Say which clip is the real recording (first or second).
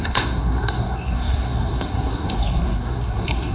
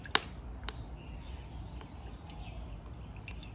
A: second